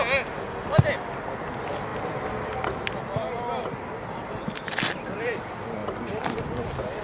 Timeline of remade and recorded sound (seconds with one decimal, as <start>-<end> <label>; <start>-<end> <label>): 0.0-5.8 recorded; 5.8-6.4 remade; 6.4-7.0 recorded